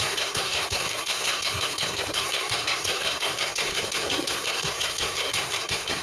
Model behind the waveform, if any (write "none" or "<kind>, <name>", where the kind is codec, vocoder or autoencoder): codec, SNAC